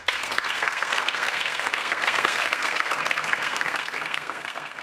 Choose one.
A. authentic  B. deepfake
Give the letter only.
B